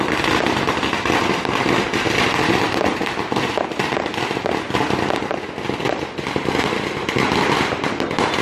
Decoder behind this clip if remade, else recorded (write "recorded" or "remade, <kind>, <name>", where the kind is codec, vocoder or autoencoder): recorded